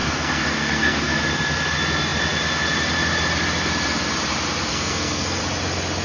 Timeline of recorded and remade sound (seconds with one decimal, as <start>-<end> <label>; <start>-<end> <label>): 0.0-1.2 remade; 1.2-4.7 recorded; 4.7-5.4 remade; 5.4-6.0 recorded